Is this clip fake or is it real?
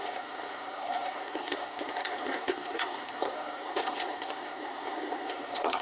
fake